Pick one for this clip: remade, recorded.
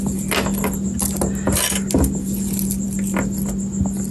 recorded